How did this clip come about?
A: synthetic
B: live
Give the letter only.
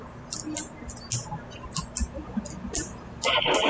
B